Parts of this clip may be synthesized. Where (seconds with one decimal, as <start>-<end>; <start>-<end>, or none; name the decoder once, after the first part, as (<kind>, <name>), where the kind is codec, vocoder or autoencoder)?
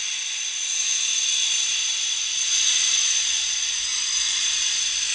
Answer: 3.9-4.4 (vocoder, BigVGAN v2)